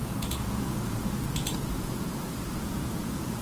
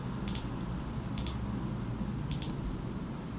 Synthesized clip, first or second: first